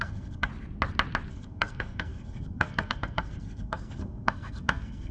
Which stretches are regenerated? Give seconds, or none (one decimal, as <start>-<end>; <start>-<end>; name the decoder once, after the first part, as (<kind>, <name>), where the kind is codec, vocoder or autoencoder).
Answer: 0.0-0.5 (codec, SNAC); 1.3-5.1